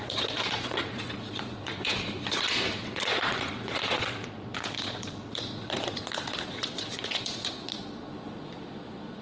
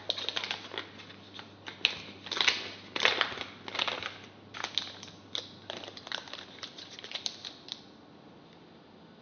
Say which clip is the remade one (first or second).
first